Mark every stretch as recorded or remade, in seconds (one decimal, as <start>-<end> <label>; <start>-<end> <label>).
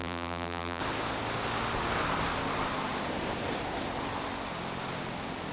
0.0-0.8 remade; 0.8-5.5 recorded